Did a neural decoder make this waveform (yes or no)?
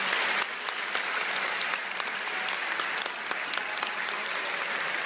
no